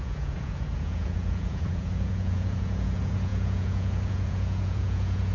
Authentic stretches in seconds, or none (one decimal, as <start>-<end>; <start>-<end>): none